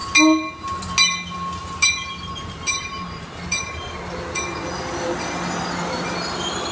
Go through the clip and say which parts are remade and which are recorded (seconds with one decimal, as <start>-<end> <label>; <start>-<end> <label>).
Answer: 0.0-1.6 recorded; 1.6-3.7 remade; 3.7-6.7 recorded